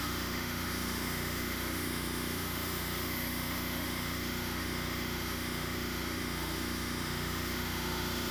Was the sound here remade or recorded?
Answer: remade